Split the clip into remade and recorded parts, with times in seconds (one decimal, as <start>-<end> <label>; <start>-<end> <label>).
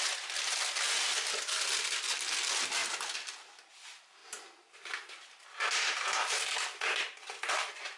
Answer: 0.0-8.0 recorded